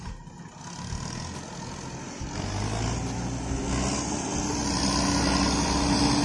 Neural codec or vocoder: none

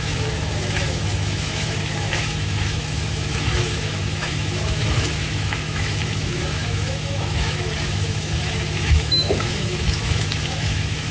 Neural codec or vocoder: autoencoder, DAC-VAE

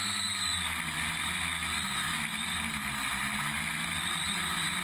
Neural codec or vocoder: none